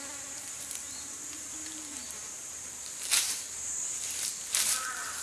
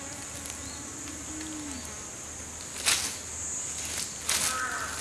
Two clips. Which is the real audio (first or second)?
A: second